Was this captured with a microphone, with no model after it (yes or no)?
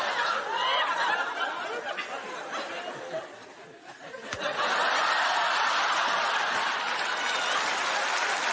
yes